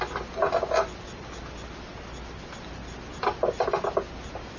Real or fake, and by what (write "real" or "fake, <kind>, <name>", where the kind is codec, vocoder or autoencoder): real